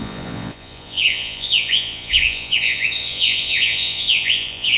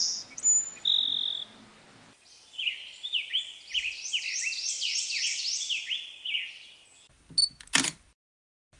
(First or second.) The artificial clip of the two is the first